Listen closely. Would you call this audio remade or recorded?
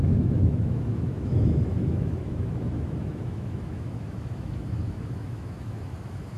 remade